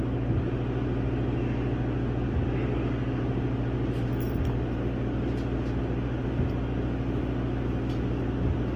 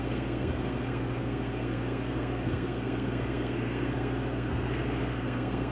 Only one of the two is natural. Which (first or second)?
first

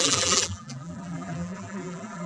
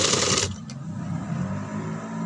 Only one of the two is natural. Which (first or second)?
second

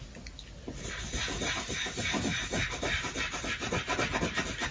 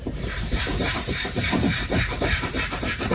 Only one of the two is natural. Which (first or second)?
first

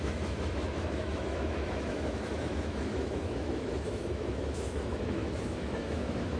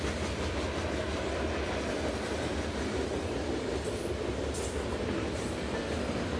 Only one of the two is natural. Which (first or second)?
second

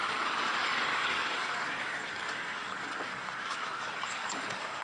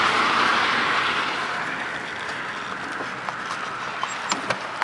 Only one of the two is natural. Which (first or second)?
second